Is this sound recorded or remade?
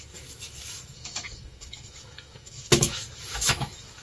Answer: remade